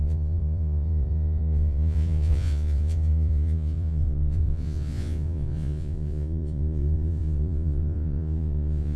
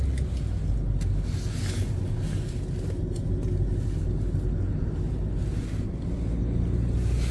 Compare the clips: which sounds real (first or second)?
second